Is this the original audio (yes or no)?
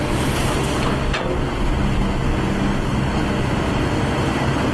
yes